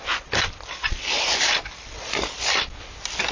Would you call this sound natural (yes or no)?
yes